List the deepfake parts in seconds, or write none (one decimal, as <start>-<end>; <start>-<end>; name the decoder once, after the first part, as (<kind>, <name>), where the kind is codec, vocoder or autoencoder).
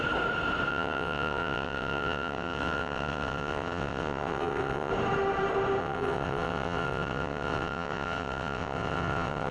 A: 0.7-4.9 (vocoder, WaveNeXt); 5.8-9.5